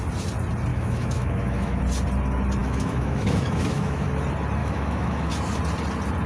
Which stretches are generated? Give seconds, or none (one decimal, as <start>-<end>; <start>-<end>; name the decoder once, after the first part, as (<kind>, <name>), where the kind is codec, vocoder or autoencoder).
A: 0.7-1.8 (autoencoder, DAC-VAE); 2.6-4.1; 4.6-5.3